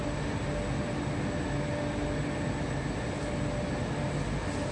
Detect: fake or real real